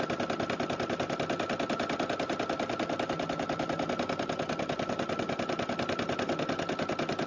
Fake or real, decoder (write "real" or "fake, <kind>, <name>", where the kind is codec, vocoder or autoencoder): real